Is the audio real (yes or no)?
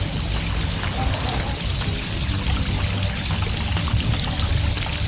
yes